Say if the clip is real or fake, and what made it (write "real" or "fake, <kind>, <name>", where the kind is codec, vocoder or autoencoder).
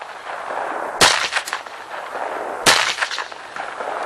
real